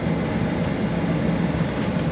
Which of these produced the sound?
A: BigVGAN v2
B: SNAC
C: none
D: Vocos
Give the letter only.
C